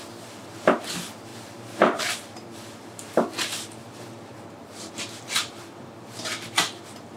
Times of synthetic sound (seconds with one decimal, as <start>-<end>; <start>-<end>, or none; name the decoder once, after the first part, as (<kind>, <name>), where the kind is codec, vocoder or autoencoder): 0.0-7.2 (vocoder, BigVGAN v2)